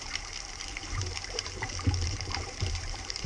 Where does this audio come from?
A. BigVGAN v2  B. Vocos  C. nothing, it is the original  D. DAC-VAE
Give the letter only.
A